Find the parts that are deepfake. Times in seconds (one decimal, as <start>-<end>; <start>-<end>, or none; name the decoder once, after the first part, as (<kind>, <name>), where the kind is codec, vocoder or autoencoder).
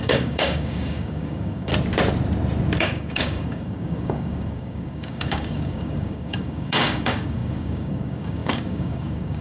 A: 0.0-1.7 (codec, DAC); 2.8-9.4